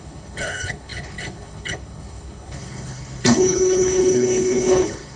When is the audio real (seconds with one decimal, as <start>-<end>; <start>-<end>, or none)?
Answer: none